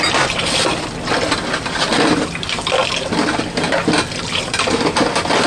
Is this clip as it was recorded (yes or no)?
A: yes